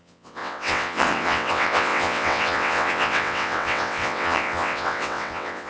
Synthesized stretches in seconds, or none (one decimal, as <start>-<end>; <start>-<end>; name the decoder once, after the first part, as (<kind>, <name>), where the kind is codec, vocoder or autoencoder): 0.0-5.7 (vocoder, WaveNeXt)

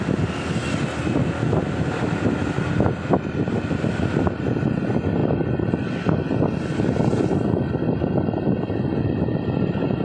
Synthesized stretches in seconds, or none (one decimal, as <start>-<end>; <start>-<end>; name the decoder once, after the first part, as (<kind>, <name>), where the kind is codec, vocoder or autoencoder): none

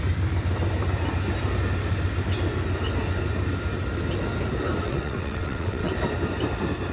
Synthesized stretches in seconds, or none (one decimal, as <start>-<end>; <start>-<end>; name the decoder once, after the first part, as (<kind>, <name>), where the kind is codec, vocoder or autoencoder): 4.8-5.9 (vocoder, WaveNeXt)

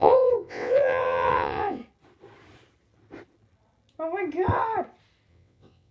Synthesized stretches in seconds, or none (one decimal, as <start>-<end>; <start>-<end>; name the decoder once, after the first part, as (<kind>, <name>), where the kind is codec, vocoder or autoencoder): 0.0-1.8 (vocoder, WaveNeXt); 5.3-5.9

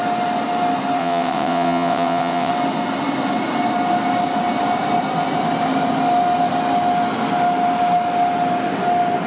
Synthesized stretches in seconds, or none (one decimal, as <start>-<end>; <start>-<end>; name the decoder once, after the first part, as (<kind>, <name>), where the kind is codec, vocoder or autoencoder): 1.0-2.5 (vocoder, WaveNeXt)

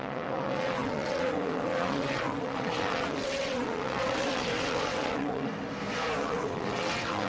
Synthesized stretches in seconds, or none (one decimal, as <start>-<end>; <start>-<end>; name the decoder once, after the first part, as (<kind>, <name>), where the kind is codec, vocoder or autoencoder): 0.0-5.5 (vocoder, WaveNeXt); 6.2-7.3

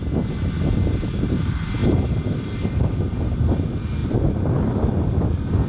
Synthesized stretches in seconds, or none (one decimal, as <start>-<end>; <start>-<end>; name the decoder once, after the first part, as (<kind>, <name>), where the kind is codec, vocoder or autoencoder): none